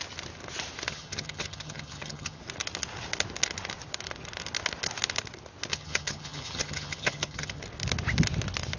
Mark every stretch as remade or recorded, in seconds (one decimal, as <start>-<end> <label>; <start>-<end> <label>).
0.0-0.9 recorded; 0.9-2.4 remade; 2.4-5.7 recorded; 5.7-7.6 remade; 7.6-8.8 recorded